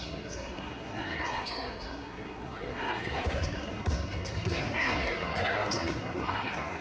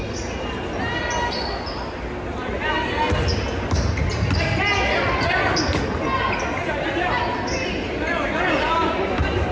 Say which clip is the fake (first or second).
first